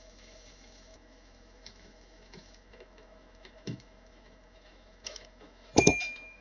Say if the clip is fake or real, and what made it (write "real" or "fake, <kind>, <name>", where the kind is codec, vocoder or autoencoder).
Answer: fake, autoencoder, DAC-VAE